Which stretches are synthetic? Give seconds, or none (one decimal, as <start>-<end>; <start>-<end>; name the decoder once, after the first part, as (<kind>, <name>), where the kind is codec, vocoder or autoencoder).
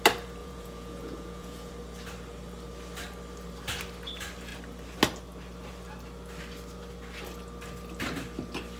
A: 0.4-1.7 (vocoder, Vocos)